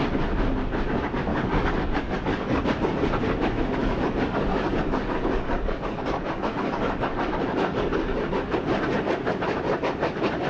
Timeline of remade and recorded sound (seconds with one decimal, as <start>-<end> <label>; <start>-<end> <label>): 0.0-1.3 recorded; 1.3-2.6 remade; 2.6-3.8 recorded; 3.8-8.3 remade; 8.3-10.5 recorded